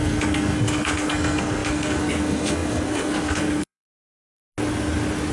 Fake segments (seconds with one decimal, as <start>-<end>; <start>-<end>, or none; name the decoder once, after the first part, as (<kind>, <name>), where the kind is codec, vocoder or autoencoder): 0.0-4.4 (codec, SNAC)